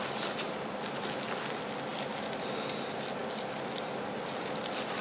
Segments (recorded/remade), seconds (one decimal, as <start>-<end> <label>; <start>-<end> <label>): 0.0-5.0 recorded